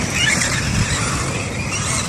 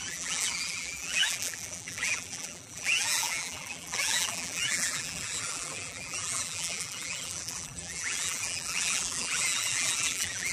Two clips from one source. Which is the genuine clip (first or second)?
first